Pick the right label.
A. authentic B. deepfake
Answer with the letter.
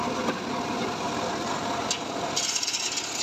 A